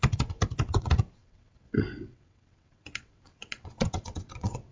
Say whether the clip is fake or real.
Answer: fake